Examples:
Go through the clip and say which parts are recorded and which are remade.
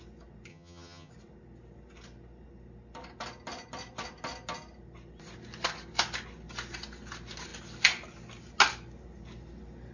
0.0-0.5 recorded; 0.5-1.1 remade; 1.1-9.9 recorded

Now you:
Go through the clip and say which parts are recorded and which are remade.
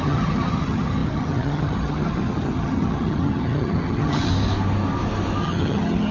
0.0-4.3 remade; 4.3-5.4 recorded; 5.4-6.1 remade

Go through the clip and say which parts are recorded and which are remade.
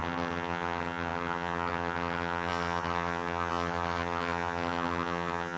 0.0-5.6 remade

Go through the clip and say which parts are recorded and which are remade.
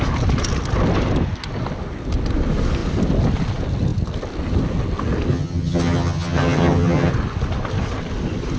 0.0-5.3 recorded; 5.3-7.1 remade; 7.1-8.6 recorded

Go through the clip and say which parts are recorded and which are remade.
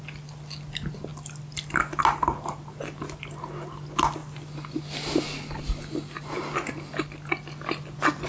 0.0-8.3 recorded